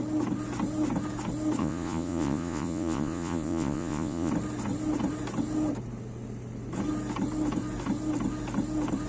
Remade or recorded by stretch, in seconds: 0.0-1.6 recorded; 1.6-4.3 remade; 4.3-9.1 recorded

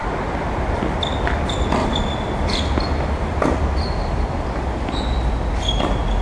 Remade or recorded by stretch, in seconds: 0.0-1.8 recorded; 1.8-5.5 remade; 5.5-6.2 recorded

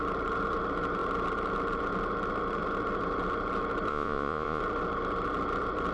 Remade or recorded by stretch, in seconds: 0.0-3.9 recorded; 3.9-4.6 remade; 4.6-5.9 recorded

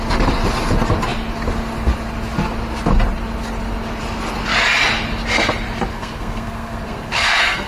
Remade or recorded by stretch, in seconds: 0.0-5.9 recorded; 5.9-7.7 remade

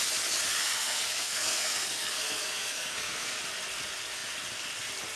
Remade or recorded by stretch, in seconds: 0.0-0.6 recorded; 0.6-3.4 remade; 3.4-5.2 recorded

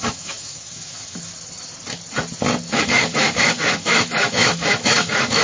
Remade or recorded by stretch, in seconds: 0.0-1.3 remade; 1.3-2.7 recorded; 2.7-5.4 remade

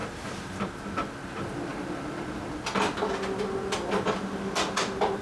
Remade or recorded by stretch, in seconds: 0.0-0.6 remade; 0.6-5.2 recorded